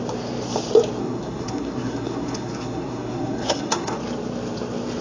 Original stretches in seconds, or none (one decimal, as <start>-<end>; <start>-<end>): 0.0-1.0; 4.0-5.0